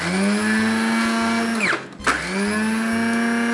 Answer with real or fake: real